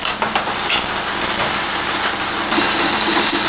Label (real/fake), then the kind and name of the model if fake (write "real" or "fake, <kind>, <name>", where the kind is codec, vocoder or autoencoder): real